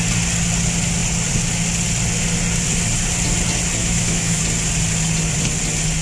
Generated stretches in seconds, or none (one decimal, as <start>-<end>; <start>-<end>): 3.8-4.4